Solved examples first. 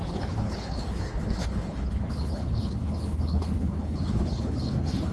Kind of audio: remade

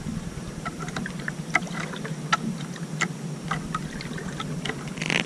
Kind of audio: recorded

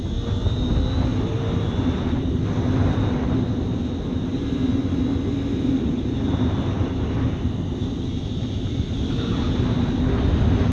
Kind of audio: recorded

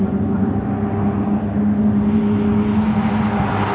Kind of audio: recorded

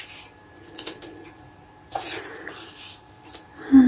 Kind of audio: recorded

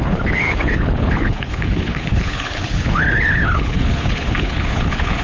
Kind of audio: remade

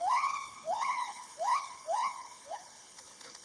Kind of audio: remade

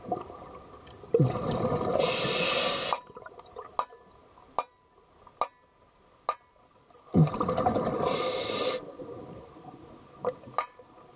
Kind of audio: recorded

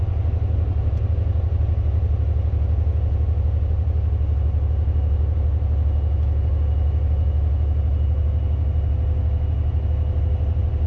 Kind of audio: recorded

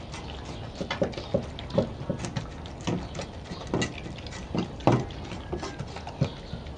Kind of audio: recorded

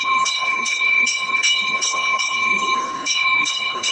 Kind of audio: remade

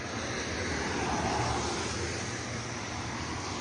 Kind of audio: recorded